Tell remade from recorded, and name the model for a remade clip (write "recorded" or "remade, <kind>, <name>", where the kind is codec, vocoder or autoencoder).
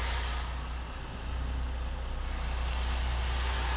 recorded